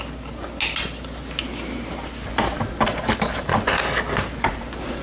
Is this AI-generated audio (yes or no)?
no